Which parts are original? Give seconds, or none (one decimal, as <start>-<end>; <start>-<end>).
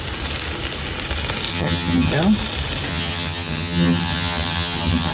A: 0.0-1.5; 2.1-2.9